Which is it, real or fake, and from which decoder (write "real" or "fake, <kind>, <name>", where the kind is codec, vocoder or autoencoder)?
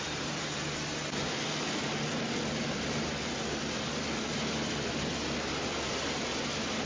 fake, vocoder, BigVGAN v2